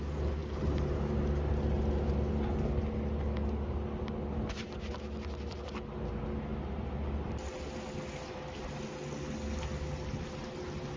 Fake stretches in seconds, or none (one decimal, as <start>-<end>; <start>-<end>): none